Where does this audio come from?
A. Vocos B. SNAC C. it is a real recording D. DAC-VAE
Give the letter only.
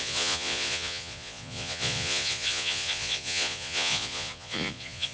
A